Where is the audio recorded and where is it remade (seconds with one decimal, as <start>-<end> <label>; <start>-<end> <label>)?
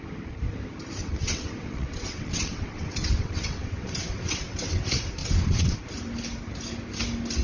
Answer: 0.0-1.0 recorded; 1.0-4.8 remade; 4.8-5.2 recorded; 5.2-5.8 remade; 5.8-7.4 recorded